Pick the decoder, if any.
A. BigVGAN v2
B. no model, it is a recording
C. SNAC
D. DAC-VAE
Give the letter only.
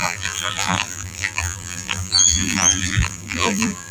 A